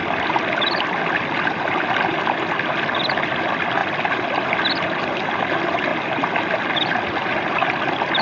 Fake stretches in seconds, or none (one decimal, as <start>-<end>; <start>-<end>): none